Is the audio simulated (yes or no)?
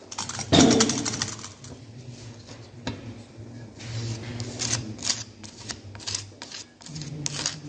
no